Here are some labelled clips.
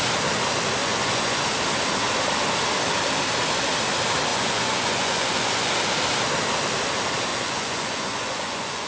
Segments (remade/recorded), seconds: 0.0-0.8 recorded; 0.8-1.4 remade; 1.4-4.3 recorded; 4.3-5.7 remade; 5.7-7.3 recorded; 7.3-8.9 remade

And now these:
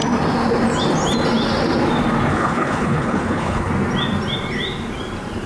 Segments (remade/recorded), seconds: 0.0-2.3 recorded; 2.3-3.7 remade; 3.7-5.5 recorded

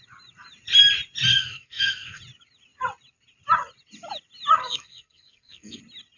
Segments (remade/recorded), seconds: 0.0-1.3 recorded; 1.3-2.2 remade; 2.2-4.6 recorded; 4.6-5.8 remade; 5.8-6.2 recorded

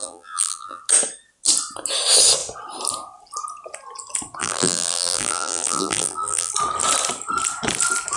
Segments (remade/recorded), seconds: 0.0-0.8 remade; 0.8-4.4 recorded; 4.4-6.5 remade; 6.5-8.2 recorded

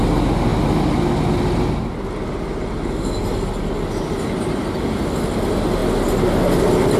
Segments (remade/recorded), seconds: 0.0-7.0 recorded